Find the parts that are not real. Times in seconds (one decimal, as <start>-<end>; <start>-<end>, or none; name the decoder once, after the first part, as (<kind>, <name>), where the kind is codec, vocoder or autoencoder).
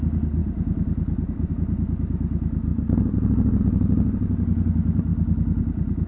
0.4-1.5 (vocoder, BigVGAN v2); 2.7-3.6; 5.1-6.1